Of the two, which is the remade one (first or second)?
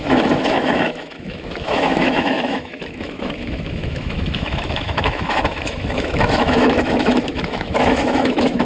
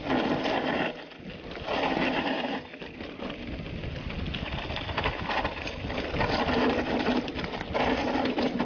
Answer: first